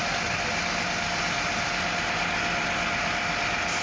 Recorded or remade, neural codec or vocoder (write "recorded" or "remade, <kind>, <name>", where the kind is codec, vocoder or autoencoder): recorded